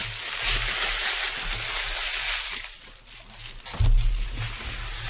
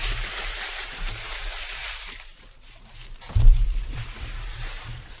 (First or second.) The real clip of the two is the first